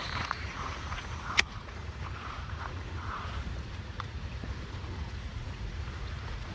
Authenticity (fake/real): fake